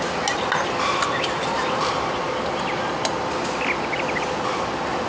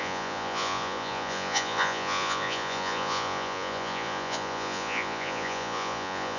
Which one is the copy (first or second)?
second